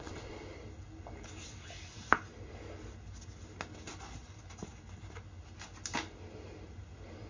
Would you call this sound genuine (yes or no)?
yes